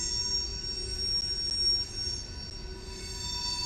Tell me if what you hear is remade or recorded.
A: recorded